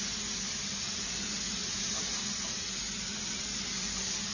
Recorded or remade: recorded